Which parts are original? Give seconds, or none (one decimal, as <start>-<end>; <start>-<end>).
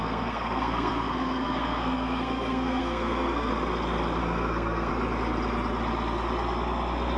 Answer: 3.5-4.2; 4.9-7.2